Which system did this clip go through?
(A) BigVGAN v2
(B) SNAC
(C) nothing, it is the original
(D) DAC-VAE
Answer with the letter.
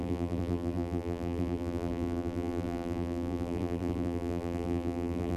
A